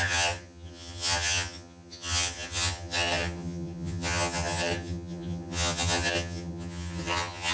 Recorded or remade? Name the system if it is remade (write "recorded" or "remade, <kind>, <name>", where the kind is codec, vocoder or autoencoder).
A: remade, vocoder, HiFi-GAN